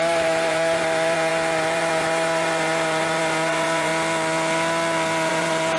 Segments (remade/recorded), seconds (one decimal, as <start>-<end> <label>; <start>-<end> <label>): 0.0-3.9 remade; 3.9-5.3 recorded; 5.3-5.8 remade